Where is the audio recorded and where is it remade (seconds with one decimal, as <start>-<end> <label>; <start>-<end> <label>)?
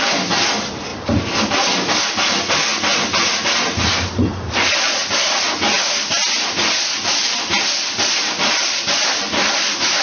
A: 0.0-2.7 remade; 2.7-3.6 recorded; 3.6-10.0 remade